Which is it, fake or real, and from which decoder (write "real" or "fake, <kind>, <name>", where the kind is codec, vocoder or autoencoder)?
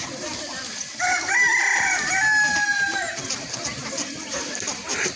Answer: real